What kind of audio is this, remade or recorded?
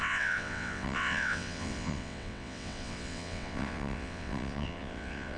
remade